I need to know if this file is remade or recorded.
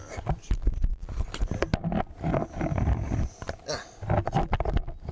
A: recorded